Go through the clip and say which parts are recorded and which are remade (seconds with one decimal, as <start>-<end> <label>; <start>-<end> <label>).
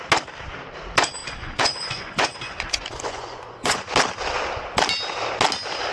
0.0-1.2 recorded; 1.2-3.9 remade; 3.9-5.9 recorded